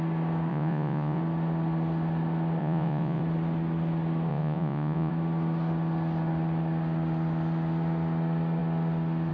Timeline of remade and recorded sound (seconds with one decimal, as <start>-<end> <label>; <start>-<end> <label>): 0.0-0.5 recorded; 0.5-1.2 remade; 1.2-2.6 recorded; 2.6-3.2 remade; 3.2-4.3 recorded; 4.3-5.1 remade; 5.1-9.3 recorded